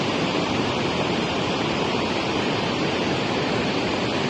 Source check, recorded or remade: remade